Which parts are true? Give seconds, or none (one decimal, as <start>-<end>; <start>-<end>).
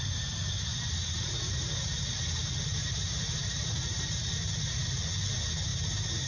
0.0-6.3